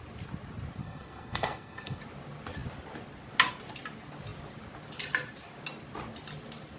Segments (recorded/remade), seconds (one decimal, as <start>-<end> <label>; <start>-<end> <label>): 0.0-0.8 recorded; 0.8-2.0 remade; 2.0-6.8 recorded